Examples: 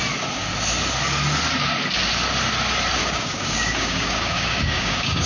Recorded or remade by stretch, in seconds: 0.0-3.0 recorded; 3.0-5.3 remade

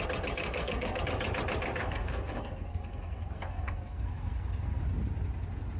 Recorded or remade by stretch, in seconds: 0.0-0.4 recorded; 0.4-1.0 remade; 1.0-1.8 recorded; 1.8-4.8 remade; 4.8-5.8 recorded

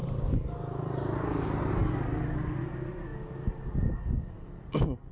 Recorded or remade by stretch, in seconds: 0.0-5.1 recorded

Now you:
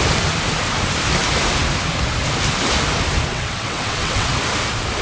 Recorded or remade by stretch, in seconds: 0.0-3.3 recorded; 3.3-4.3 remade; 4.3-5.0 recorded